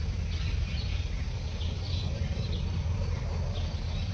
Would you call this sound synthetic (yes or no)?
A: no